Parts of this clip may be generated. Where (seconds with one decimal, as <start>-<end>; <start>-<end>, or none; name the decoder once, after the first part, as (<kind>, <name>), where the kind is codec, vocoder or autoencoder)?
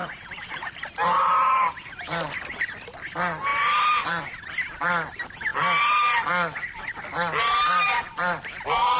0.0-0.8 (vocoder, BigVGAN v2); 3.5-4.2